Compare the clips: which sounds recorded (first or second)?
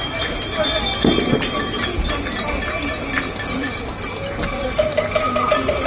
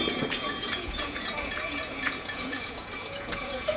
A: first